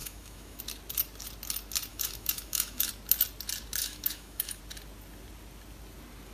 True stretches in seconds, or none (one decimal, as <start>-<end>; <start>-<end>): 0.6-1.9; 2.9-3.8; 4.6-6.3

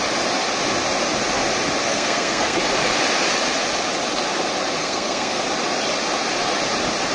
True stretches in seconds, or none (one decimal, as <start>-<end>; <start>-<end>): 0.0-1.8; 2.6-4.8; 5.4-7.1

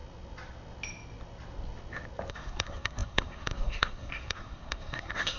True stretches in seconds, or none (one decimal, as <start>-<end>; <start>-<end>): 0.0-2.3

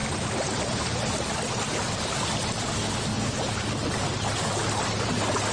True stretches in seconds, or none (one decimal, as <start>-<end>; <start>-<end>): 0.0-5.5

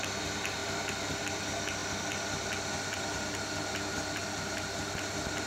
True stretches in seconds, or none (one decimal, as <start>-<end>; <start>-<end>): 0.0-5.5

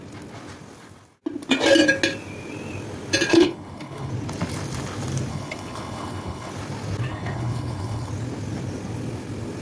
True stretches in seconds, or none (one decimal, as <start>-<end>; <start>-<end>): 0.0-3.3; 4.1-5.3; 6.5-7.1; 8.1-9.6